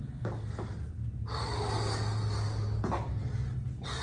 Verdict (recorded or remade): recorded